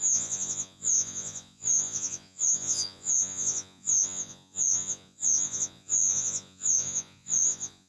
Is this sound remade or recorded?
remade